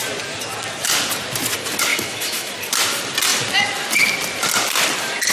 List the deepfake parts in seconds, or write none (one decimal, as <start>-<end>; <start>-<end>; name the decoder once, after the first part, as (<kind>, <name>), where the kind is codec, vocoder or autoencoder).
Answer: 1.9-2.5 (autoencoder, DAC-VAE)